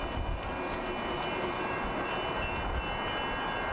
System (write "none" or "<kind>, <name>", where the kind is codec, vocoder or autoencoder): none